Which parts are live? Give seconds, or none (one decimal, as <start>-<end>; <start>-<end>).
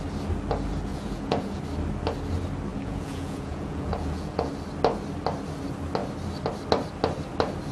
0.0-0.9; 1.6-2.7; 4.5-7.7